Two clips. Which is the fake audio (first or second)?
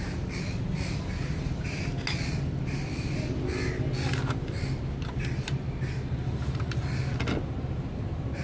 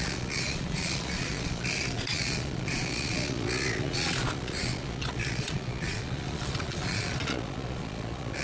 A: second